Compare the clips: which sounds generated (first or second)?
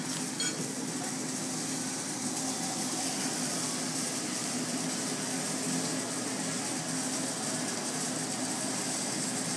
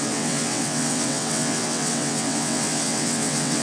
second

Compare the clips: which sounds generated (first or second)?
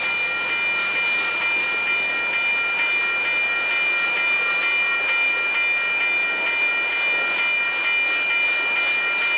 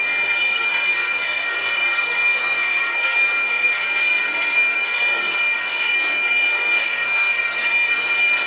second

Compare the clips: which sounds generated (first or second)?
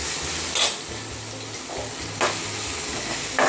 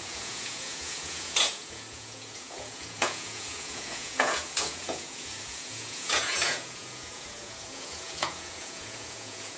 second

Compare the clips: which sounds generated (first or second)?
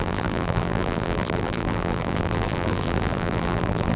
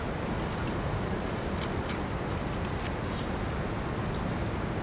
first